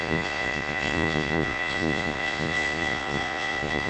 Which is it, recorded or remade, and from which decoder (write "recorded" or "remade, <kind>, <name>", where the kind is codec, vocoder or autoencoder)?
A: remade, vocoder, Vocos